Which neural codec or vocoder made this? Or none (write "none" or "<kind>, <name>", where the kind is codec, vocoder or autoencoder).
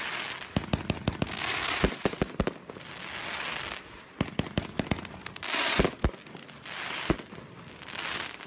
none